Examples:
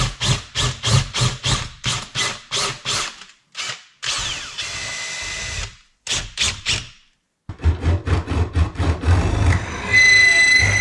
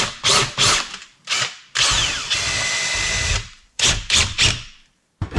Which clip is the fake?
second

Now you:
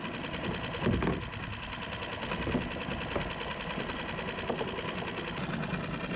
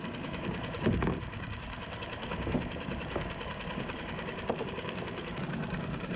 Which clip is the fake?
second